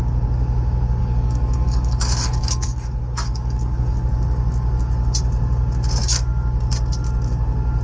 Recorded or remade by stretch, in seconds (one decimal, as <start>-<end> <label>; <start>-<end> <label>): 0.0-1.0 recorded; 1.0-4.0 remade; 4.0-7.8 recorded